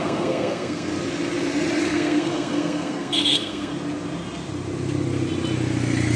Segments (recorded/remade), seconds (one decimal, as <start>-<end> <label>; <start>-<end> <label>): 0.0-0.9 remade; 0.9-1.8 recorded; 1.8-3.7 remade; 3.7-6.2 recorded